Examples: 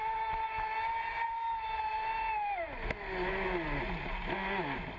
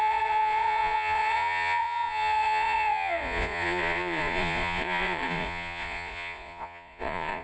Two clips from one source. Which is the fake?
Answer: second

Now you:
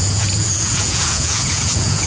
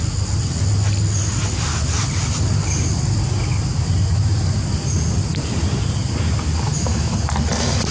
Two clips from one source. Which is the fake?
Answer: first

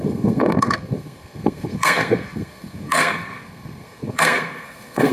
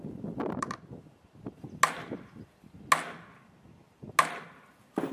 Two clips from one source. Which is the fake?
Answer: first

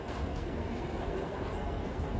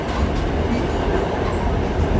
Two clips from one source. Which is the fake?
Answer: first